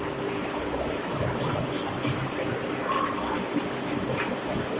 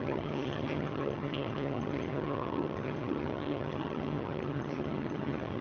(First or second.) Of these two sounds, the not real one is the second